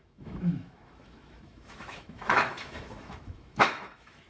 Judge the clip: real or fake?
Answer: fake